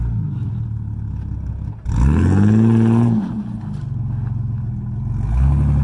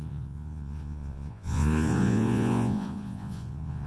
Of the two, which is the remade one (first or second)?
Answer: second